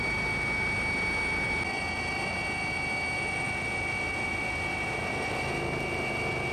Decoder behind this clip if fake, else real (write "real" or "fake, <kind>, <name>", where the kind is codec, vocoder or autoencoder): real